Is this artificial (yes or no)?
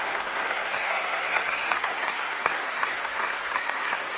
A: yes